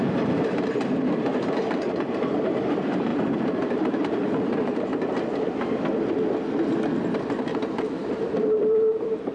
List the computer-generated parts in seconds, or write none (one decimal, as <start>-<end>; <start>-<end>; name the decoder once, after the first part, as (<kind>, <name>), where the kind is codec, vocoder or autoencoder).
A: 0.0-4.9 (vocoder, BigVGAN v2); 7.6-9.3